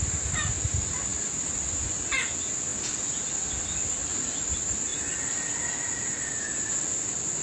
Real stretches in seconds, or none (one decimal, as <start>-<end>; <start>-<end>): 0.0-7.4